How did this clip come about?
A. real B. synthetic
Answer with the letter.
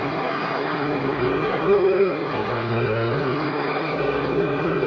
B